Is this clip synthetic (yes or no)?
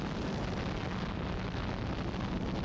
no